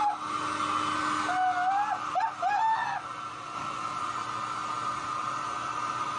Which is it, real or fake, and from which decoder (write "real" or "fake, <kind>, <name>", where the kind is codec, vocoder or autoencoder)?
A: real